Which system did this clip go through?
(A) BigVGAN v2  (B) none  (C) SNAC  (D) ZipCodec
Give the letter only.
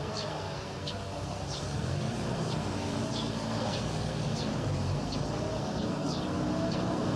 C